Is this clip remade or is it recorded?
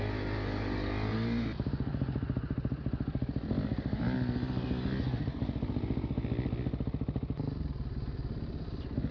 recorded